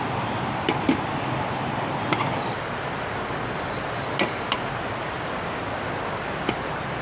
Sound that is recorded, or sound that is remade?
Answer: recorded